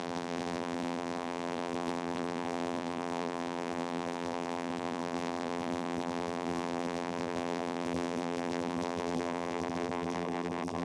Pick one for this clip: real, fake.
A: fake